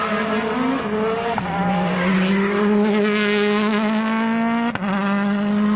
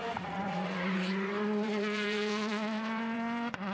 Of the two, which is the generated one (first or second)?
second